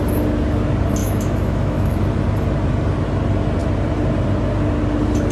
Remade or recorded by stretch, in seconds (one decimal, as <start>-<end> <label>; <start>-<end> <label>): 0.0-1.0 recorded; 1.0-2.0 remade; 2.0-5.3 recorded